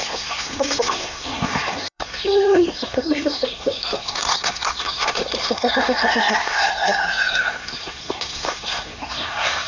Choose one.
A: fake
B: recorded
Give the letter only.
A